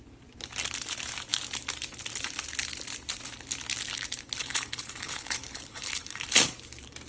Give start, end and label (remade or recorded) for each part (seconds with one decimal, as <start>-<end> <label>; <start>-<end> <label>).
0.0-4.4 recorded; 4.4-6.4 remade; 6.4-7.1 recorded